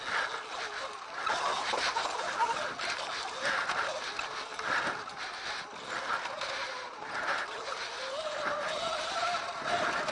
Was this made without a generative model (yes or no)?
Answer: yes